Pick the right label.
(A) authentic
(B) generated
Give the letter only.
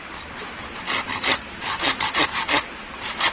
A